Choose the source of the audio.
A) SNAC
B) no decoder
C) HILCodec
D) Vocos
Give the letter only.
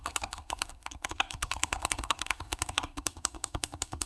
A